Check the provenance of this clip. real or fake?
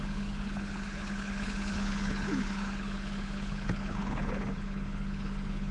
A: fake